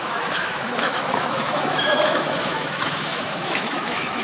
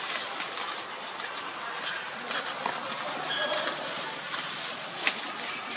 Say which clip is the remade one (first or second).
first